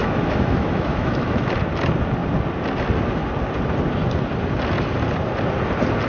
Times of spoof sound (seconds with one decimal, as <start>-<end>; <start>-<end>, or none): 0.0-1.5